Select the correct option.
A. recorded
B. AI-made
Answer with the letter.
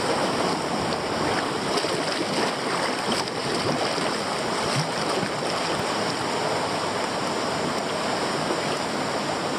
A